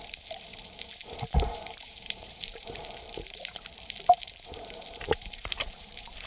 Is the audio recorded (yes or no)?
no